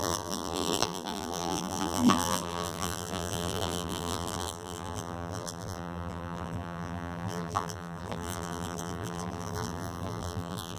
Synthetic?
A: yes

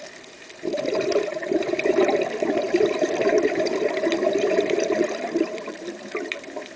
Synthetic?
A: yes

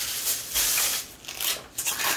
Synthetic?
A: no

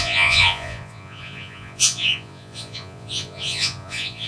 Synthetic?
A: yes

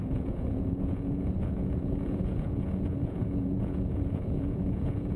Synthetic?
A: yes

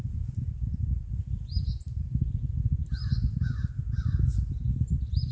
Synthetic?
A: no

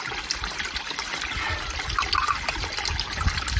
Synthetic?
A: no